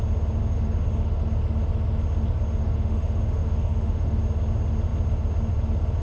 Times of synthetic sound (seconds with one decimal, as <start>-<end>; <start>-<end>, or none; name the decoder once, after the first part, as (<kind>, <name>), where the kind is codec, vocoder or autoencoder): 0.4-1.2 (autoencoder, DAC-VAE); 2.6-4.2